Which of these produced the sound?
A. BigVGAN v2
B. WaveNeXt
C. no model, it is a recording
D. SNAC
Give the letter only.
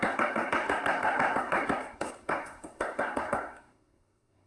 D